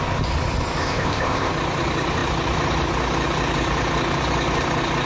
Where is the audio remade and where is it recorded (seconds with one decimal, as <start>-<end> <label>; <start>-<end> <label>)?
0.0-0.8 recorded; 0.8-1.5 remade; 1.5-5.1 recorded